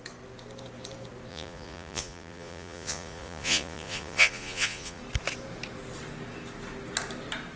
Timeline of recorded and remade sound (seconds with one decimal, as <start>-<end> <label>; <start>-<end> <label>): 0.0-1.3 recorded; 1.3-5.0 remade; 5.0-7.6 recorded